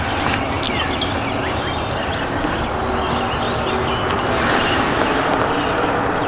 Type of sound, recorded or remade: recorded